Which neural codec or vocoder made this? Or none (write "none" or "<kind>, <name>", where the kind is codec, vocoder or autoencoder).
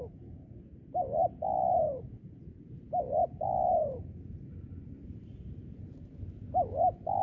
none